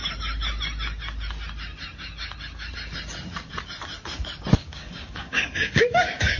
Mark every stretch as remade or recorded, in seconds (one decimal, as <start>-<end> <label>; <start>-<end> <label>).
0.0-4.6 recorded; 4.6-6.4 remade